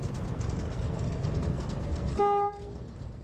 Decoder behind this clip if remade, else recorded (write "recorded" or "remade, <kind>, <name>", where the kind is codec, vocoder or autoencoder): remade, codec, SNAC